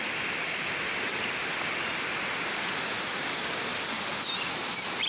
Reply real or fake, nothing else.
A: real